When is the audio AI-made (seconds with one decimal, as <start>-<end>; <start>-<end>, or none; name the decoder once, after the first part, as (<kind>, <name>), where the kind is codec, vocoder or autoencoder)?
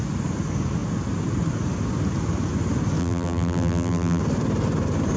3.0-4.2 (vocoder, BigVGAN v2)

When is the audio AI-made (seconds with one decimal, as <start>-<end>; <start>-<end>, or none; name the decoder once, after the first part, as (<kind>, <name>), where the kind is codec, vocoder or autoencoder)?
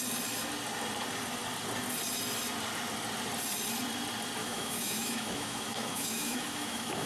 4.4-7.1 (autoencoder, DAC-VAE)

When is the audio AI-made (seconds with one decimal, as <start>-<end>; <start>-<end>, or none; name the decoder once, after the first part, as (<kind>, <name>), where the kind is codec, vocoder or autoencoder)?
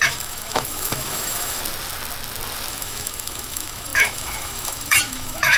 0.0-1.6 (autoencoder, DAC-VAE); 2.7-5.6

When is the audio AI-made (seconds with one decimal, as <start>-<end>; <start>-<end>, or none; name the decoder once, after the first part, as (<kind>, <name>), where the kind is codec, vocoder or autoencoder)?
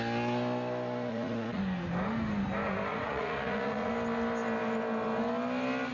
1.1-1.6 (vocoder, Vocos); 2.9-3.9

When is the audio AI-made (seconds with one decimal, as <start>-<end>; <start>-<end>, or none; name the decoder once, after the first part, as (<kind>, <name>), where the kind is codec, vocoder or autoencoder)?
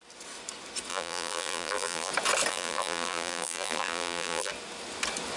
0.9-2.1 (vocoder, BigVGAN v2); 2.5-4.5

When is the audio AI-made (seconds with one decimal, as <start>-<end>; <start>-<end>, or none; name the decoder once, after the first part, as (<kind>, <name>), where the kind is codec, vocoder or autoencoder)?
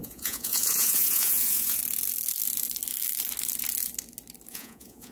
0.0-1.8 (vocoder, Vocos); 4.5-5.1